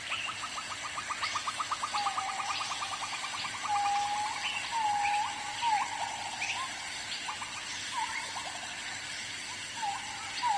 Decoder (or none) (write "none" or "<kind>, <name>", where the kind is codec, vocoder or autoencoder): none